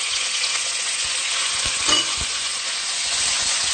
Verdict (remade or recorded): remade